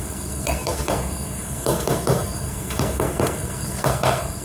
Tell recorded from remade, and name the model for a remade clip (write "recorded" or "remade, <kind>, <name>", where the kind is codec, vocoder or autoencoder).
remade, codec, SNAC